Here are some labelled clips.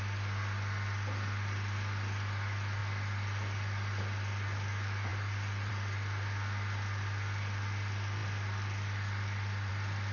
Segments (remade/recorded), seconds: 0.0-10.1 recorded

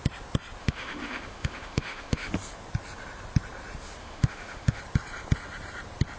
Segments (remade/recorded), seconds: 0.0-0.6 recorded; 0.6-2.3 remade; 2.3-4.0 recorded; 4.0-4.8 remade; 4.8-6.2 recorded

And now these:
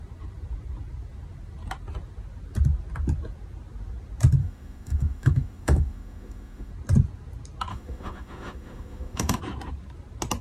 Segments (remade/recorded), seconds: 0.0-4.4 recorded; 4.4-6.7 remade; 6.7-7.7 recorded; 7.7-9.4 remade; 9.4-10.4 recorded